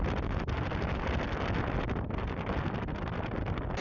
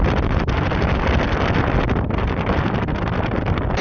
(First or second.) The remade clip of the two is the second